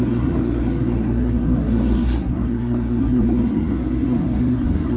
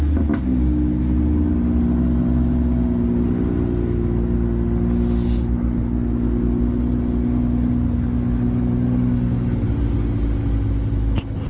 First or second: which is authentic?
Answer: second